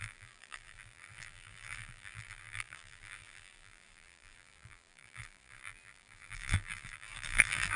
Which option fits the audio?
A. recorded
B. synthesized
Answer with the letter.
B